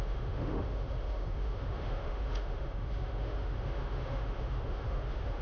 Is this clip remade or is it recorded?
remade